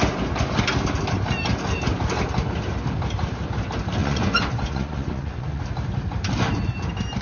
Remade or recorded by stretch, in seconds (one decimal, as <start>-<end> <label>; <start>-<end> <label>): 0.0-4.0 recorded; 4.0-5.6 remade; 5.6-7.2 recorded